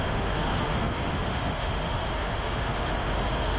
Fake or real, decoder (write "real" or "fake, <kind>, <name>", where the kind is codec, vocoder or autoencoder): fake, autoencoder, DAC-VAE